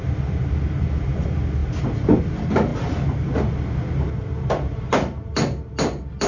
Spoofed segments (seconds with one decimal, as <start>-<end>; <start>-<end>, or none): 0.0-2.7; 4.0-5.3